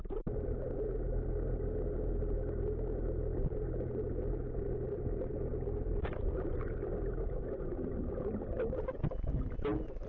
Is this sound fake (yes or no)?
no